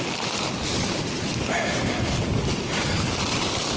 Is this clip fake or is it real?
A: real